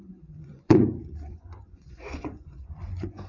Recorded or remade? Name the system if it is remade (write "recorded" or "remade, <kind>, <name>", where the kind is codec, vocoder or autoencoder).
remade, vocoder, Vocos